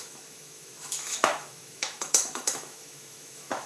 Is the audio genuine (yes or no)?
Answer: no